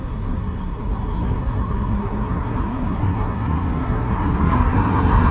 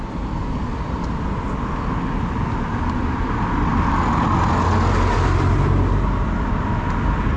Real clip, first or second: second